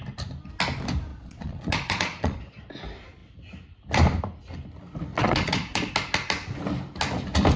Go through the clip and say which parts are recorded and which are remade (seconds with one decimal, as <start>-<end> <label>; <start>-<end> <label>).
0.0-1.1 recorded; 1.1-2.6 remade; 2.6-5.1 recorded; 5.1-5.9 remade; 5.9-7.6 recorded